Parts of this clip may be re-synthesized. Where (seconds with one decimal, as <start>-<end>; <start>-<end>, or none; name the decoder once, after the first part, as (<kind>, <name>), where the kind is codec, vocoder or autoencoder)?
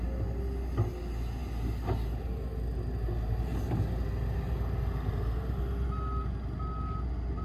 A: none